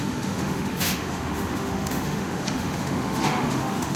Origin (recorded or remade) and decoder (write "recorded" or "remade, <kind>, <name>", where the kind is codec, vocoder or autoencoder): remade, autoencoder, DAC-VAE